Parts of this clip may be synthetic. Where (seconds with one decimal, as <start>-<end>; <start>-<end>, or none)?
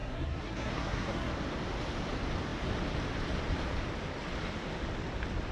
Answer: 0.0-1.3